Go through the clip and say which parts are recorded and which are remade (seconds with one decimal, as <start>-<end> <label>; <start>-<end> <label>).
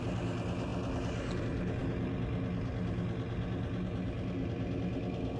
0.0-5.4 recorded